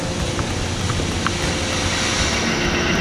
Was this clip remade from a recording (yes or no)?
no